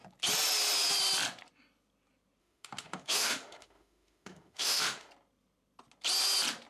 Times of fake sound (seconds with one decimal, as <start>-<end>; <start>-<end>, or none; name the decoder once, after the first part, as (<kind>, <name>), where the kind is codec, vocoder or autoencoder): 2.4-5.1 (autoencoder, DAC-VAE)